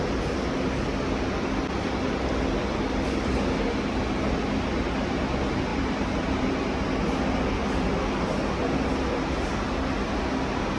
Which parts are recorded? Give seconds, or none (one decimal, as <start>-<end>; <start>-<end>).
0.0-5.7; 6.7-10.8